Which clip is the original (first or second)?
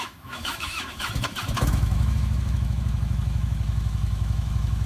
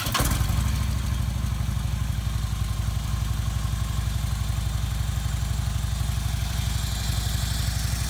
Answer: second